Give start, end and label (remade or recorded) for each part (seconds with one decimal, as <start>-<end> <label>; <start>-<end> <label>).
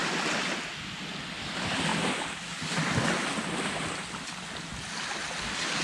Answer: 0.0-0.7 remade; 0.7-1.9 recorded; 1.9-4.9 remade; 4.9-5.8 recorded